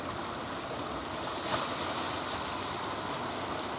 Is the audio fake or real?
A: real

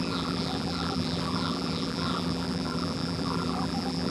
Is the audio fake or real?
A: fake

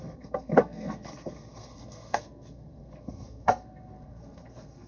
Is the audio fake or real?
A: fake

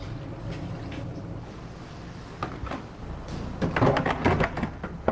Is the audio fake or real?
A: real